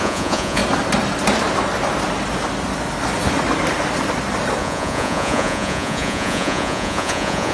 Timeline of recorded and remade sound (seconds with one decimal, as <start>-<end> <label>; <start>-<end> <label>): 0.0-0.6 remade; 0.6-4.6 recorded; 4.6-7.5 remade

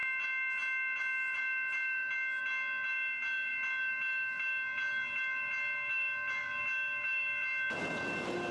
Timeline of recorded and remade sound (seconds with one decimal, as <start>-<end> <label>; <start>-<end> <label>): 0.0-8.5 recorded

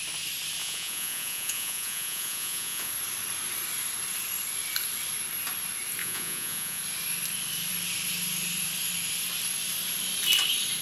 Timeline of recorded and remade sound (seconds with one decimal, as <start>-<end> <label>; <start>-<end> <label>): 0.0-0.6 recorded; 0.6-2.9 remade; 2.9-6.0 recorded; 6.0-6.8 remade; 6.8-10.8 recorded

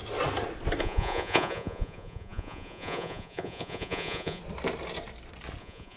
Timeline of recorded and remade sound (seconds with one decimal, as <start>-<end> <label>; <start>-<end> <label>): 0.0-0.8 recorded; 0.8-4.4 remade; 4.4-5.6 recorded; 5.6-6.0 remade

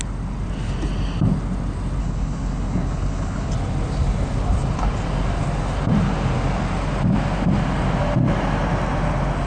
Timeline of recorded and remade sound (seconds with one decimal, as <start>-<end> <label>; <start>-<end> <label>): 0.0-2.0 recorded; 2.0-3.5 remade; 3.5-9.5 recorded

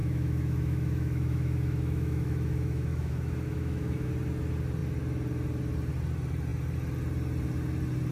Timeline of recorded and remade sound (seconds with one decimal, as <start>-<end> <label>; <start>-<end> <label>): 0.0-4.1 remade; 4.1-8.1 recorded